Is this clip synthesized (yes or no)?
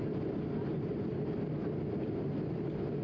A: no